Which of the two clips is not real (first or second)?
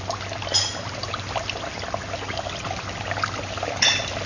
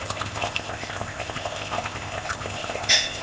second